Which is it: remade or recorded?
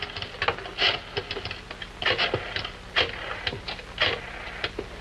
recorded